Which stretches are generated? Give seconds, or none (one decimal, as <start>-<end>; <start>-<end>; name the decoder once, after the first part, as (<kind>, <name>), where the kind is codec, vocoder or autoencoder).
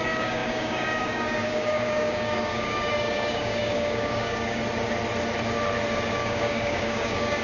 0.0-4.6 (codec, DAC); 6.1-7.4